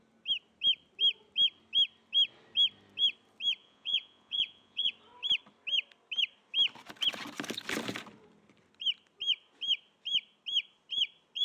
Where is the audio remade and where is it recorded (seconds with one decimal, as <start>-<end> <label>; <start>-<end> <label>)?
0.0-3.6 recorded; 3.6-4.9 remade; 4.9-11.4 recorded